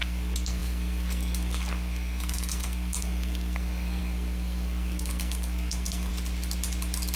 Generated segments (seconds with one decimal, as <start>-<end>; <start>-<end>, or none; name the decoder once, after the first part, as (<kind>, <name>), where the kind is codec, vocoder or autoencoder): 0.0-6.1 (codec, SNAC)